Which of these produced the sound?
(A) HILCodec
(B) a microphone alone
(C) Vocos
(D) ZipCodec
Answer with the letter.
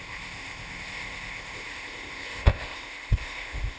D